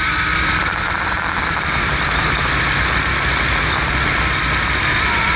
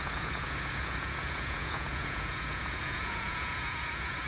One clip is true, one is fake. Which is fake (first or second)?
second